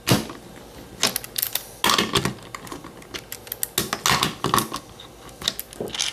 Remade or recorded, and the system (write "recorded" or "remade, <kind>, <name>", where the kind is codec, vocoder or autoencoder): recorded